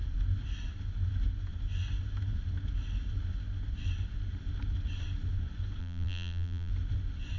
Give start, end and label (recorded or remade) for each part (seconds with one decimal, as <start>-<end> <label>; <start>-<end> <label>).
0.0-5.8 recorded; 5.8-6.7 remade; 6.7-7.4 recorded

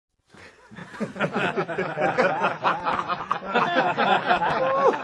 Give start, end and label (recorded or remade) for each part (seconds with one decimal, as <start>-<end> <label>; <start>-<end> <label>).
0.0-5.0 recorded

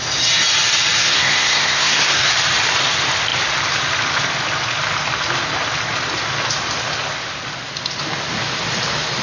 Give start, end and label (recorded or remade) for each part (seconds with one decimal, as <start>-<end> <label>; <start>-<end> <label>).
0.0-1.0 recorded; 1.0-2.3 remade; 2.3-9.2 recorded

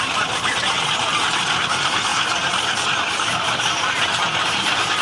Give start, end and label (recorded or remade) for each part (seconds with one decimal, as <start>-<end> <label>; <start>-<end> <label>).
0.0-2.1 remade; 2.1-4.4 recorded; 4.4-5.0 remade